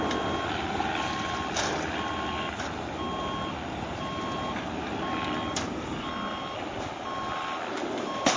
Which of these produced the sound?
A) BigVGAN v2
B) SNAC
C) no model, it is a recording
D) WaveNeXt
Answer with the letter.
C